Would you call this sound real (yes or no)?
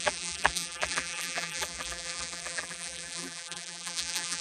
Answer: no